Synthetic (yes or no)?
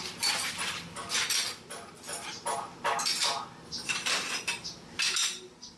no